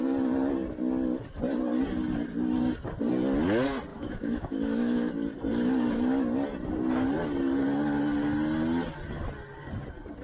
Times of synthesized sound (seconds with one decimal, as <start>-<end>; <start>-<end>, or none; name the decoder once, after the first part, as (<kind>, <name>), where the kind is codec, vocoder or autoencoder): 3.9-5.1 (autoencoder, DAC-VAE)